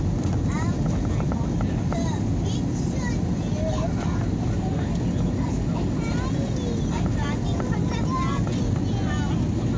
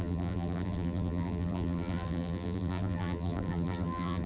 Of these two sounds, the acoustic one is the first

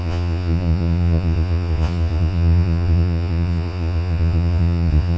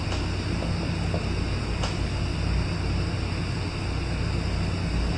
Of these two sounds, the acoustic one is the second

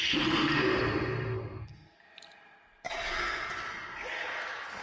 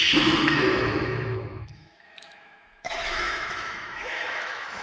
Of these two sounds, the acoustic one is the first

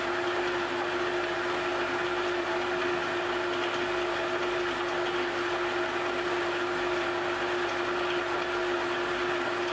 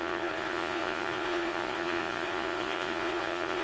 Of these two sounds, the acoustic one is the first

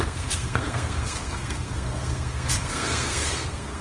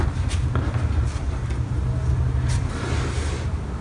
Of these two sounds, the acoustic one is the second